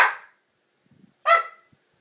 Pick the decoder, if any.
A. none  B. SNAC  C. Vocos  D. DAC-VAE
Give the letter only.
A